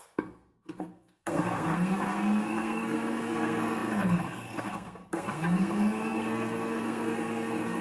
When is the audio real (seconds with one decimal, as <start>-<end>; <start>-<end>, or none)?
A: none